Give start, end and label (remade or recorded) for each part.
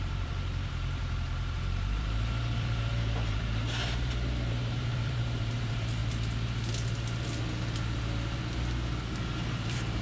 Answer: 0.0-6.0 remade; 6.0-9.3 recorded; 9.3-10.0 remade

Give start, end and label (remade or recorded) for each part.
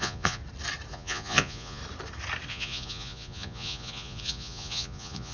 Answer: 0.0-0.4 remade; 0.4-0.9 recorded; 0.9-1.8 remade; 1.8-2.5 recorded; 2.5-5.3 remade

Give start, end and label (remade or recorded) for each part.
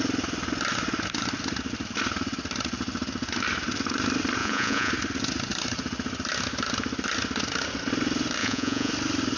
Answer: 0.0-4.4 recorded; 4.4-4.9 remade; 4.9-8.4 recorded; 8.4-8.9 remade; 8.9-9.4 recorded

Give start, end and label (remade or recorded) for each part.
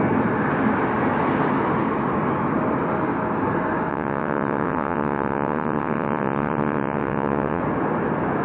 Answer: 0.0-3.9 recorded; 3.9-7.6 remade; 7.6-8.4 recorded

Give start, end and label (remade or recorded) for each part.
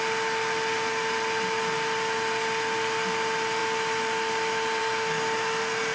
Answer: 0.0-5.9 recorded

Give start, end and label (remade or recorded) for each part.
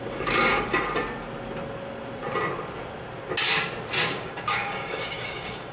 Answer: 0.0-0.7 remade; 0.7-4.1 recorded; 4.1-5.7 remade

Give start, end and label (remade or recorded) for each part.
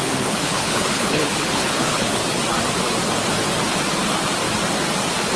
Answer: 0.0-2.2 remade; 2.2-5.4 recorded